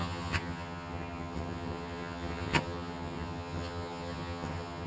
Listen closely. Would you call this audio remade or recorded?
remade